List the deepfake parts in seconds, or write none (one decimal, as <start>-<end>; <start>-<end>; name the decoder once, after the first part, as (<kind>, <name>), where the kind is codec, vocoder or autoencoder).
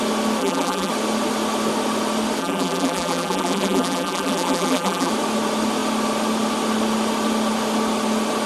0.4-0.9 (vocoder, BigVGAN v2); 2.4-5.1